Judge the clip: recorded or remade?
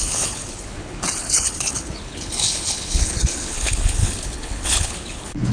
remade